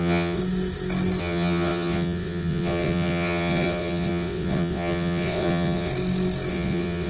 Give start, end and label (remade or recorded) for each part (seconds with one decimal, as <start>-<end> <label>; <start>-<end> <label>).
0.0-0.4 remade; 0.4-1.2 recorded; 1.2-5.9 remade; 5.9-6.5 recorded; 6.5-7.1 remade